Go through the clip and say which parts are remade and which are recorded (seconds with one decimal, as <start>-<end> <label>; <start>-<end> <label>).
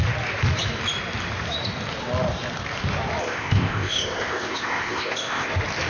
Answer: 0.0-3.2 recorded; 3.2-5.5 remade; 5.5-5.9 recorded